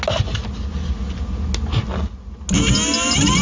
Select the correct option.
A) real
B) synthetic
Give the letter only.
A